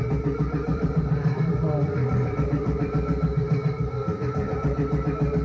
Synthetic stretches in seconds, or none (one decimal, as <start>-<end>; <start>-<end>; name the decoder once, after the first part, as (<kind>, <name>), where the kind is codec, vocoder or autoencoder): 0.7-2.9 (vocoder, BigVGAN v2)